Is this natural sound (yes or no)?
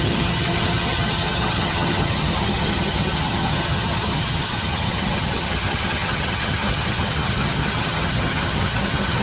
no